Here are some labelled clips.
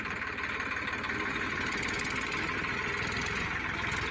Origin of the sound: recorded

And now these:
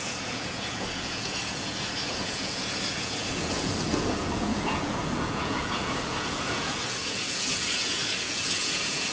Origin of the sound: remade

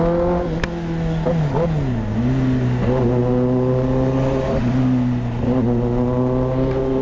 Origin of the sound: recorded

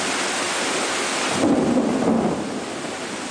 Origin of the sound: recorded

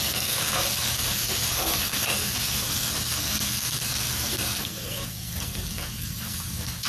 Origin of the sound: remade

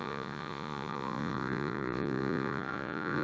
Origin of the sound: remade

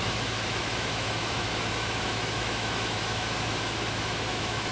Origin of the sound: remade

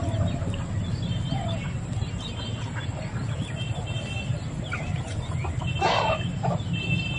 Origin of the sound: recorded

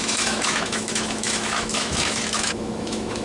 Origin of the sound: remade